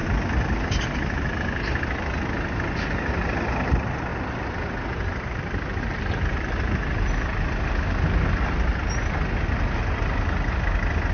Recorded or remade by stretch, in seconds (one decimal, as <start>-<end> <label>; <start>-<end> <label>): 0.0-1.6 remade; 1.6-4.1 recorded; 4.1-5.8 remade; 5.8-11.1 recorded